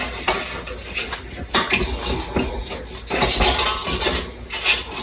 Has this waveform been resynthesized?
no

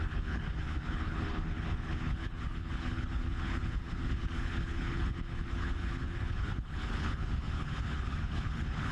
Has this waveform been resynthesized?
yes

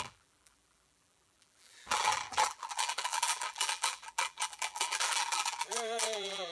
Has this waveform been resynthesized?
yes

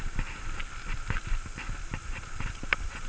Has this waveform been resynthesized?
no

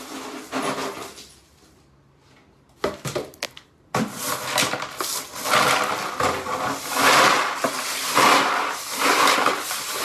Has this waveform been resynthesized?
no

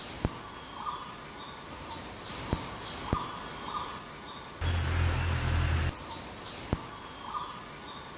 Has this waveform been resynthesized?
no